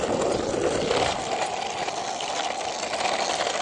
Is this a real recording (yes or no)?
yes